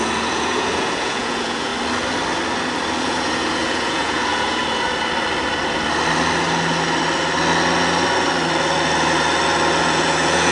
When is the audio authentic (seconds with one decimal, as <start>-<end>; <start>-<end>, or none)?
1.7-3.0; 4.6-9.8